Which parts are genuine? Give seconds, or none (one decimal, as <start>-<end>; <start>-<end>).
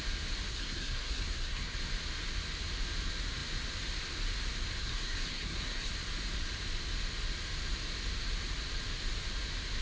0.0-0.5; 1.8-4.8; 5.9-9.8